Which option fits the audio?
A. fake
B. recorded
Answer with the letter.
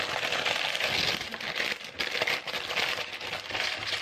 B